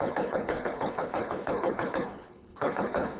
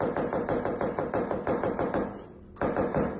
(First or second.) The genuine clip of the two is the second